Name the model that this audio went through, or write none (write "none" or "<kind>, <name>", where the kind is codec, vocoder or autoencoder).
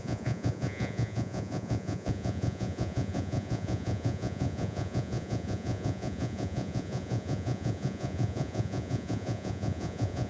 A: vocoder, Vocos